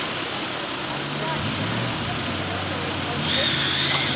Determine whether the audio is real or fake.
real